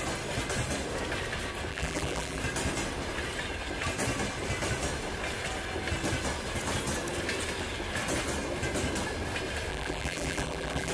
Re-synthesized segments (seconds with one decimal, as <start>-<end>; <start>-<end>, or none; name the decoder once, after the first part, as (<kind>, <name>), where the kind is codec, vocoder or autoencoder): 1.7-2.4 (vocoder, BigVGAN v2); 9.7-10.9